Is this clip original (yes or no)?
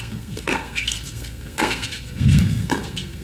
no